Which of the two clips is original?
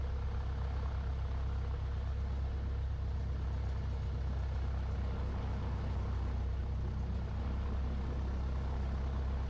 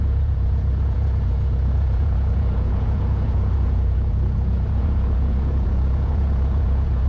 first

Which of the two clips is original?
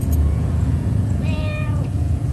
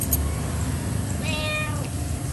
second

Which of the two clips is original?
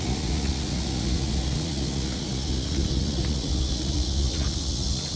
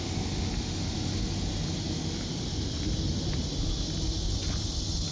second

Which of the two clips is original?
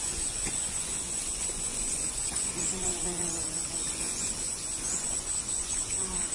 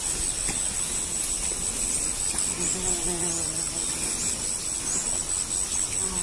second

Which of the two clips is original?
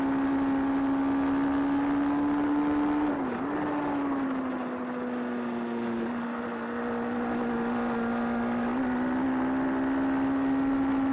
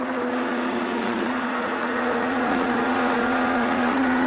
first